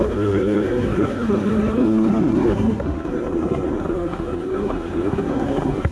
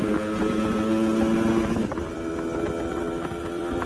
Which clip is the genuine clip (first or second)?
second